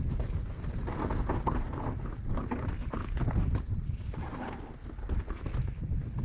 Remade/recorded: recorded